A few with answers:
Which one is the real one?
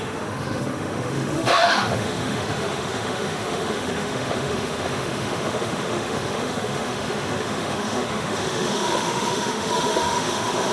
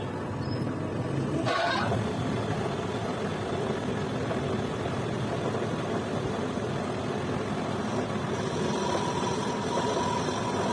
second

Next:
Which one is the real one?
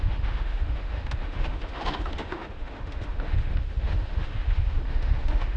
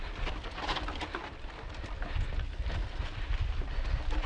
second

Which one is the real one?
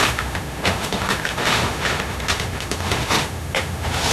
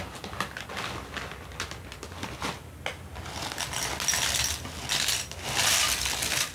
second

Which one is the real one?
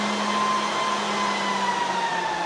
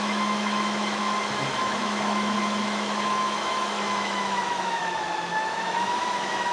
first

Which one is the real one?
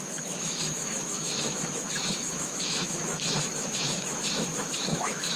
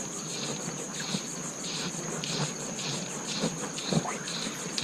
second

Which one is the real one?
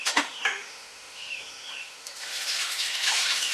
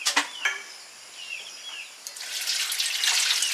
second